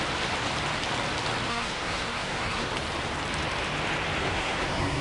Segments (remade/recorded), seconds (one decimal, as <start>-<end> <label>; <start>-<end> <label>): 0.0-1.5 recorded; 1.5-2.7 remade; 2.7-4.2 recorded; 4.2-5.0 remade